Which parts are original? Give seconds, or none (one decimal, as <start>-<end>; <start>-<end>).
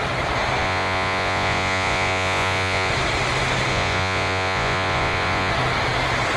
0.0-0.6; 2.9-3.7; 5.5-6.4